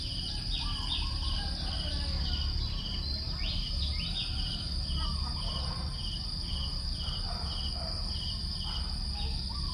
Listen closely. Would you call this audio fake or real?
real